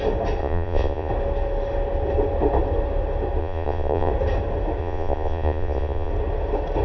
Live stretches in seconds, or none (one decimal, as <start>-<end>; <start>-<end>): 0.0-0.4; 1.1-3.4; 4.1-4.8; 6.1-6.8